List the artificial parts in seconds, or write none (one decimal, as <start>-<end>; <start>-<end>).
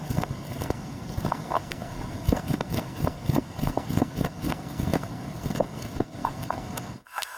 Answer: 0.0-7.4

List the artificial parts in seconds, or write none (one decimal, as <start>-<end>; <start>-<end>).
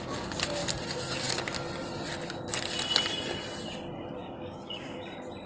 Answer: 4.2-5.0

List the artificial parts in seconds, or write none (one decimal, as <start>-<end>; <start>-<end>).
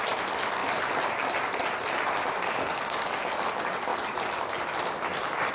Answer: 2.6-3.1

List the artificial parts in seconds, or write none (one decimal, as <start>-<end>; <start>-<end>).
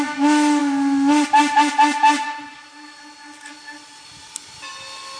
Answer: none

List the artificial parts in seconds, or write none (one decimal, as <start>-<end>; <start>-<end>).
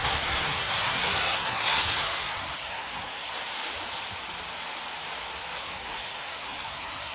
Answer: 0.0-3.3; 5.6-7.1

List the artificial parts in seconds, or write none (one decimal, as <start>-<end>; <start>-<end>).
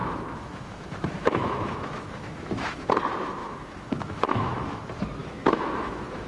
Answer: 0.0-2.9; 3.4-4.8; 5.2-6.3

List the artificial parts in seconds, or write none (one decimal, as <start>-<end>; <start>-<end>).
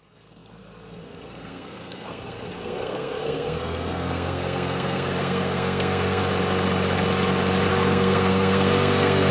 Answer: 0.0-6.2; 7.7-9.3